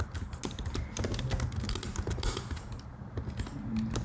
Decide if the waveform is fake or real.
real